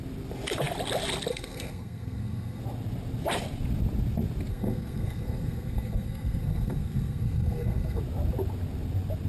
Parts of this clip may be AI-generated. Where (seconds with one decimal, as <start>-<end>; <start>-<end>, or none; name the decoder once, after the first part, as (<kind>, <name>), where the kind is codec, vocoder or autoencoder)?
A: 1.3-2.6 (codec, SNAC); 4.5-8.0